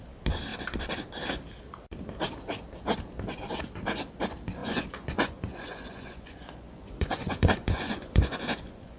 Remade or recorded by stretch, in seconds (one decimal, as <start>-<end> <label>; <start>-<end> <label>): 0.0-4.6 recorded; 4.6-9.0 remade